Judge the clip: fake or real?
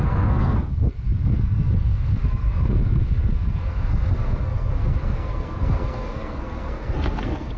fake